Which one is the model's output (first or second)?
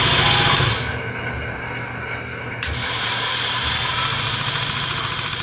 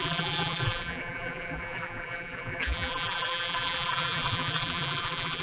second